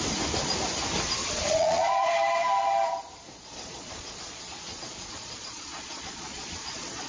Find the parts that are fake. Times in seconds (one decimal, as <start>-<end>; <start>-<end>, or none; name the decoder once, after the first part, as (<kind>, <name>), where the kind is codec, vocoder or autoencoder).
1.2-2.1 (vocoder, Vocos); 3.3-7.1